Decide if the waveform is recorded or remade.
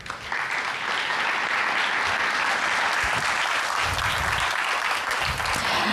recorded